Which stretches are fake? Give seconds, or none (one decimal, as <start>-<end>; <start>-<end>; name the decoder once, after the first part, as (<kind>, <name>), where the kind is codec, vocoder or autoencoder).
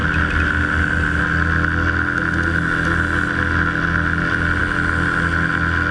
none